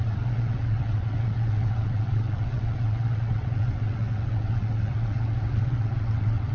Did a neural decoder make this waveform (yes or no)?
yes